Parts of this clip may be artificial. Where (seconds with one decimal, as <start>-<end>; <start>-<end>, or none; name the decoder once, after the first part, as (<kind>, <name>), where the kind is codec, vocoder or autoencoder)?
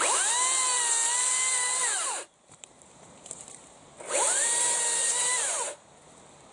1.8-5.7 (vocoder, BigVGAN v2)